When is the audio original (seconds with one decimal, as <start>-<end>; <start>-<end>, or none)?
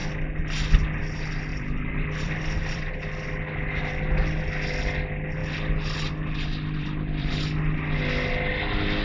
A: 0.0-1.5; 2.9-6.8; 7.3-9.0